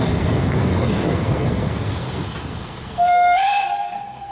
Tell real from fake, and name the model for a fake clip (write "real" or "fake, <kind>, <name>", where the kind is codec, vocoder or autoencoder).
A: fake, codec, SNAC